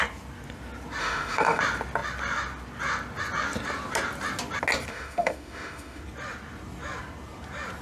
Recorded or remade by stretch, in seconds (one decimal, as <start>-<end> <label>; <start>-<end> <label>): 0.0-1.0 recorded; 1.0-1.6 remade; 1.6-4.9 recorded; 4.9-6.0 remade; 6.0-7.8 recorded